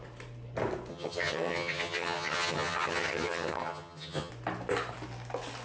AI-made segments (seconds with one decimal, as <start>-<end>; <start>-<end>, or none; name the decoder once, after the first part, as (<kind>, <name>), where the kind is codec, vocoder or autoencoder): 0.9-4.3 (vocoder, HiFi-GAN)